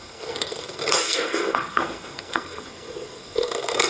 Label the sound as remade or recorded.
remade